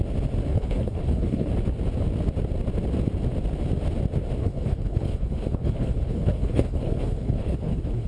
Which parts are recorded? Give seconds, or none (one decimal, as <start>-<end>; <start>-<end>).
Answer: 0.0-0.5; 1.5-4.4